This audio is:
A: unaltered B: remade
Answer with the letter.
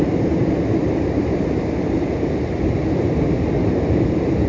B